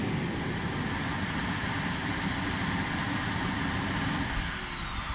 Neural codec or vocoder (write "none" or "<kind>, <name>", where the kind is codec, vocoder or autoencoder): none